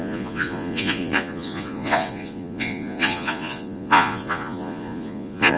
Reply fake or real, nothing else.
fake